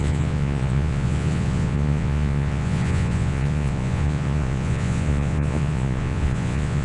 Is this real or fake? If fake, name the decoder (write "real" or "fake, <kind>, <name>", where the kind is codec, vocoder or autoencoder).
fake, vocoder, Vocos